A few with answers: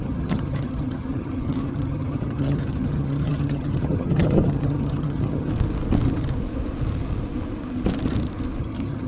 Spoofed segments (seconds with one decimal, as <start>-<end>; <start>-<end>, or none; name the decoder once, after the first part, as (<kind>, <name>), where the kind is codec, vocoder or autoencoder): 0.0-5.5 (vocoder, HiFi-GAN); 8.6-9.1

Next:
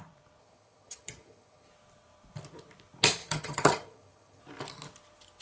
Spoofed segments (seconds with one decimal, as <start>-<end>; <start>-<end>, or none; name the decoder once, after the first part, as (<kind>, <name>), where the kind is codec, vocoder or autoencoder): 0.4-1.7 (vocoder, HiFi-GAN); 3.2-4.4

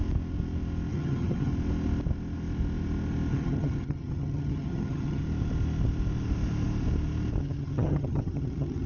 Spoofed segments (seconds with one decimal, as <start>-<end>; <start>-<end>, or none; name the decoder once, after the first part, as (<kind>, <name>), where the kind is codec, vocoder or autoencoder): 0.9-1.5 (vocoder, HiFi-GAN); 3.3-5.2; 7.4-8.9

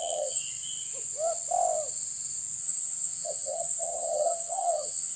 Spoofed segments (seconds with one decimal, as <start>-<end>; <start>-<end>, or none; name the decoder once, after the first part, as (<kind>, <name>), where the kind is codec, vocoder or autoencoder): 0.0-0.4 (vocoder, HiFi-GAN); 2.6-5.2

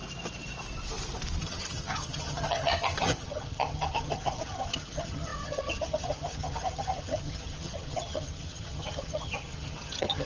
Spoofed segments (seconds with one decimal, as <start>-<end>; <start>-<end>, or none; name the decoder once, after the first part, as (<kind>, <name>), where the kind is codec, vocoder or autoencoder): 1.4-10.3 (vocoder, HiFi-GAN)

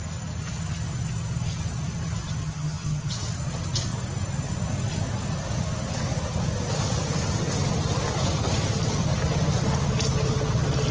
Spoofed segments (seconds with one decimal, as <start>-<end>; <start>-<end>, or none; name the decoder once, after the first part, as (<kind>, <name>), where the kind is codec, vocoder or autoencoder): 2.4-3.1 (vocoder, HiFi-GAN)

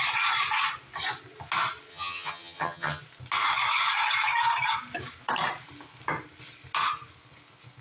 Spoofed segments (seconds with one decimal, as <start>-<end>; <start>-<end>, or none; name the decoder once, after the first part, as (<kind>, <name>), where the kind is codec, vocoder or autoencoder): 1.9-3.0 (vocoder, HiFi-GAN)